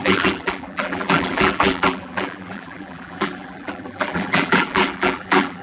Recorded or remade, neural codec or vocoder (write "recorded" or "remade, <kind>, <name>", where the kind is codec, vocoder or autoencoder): remade, vocoder, BigVGAN v2